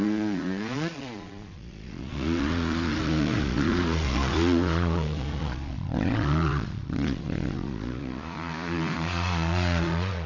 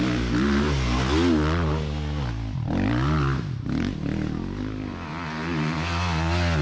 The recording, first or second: second